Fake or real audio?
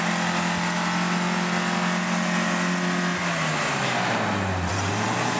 real